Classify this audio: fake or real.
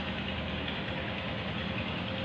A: real